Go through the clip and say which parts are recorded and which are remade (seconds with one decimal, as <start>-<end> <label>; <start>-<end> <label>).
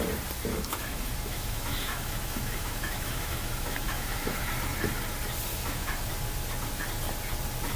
0.0-0.5 recorded; 0.5-4.5 remade; 4.5-5.5 recorded; 5.5-6.1 remade; 6.1-7.8 recorded